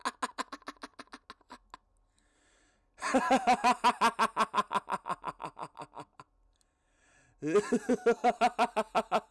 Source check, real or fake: real